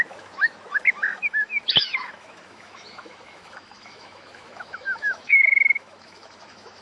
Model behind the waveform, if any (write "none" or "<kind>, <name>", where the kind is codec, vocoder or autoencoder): autoencoder, DAC-VAE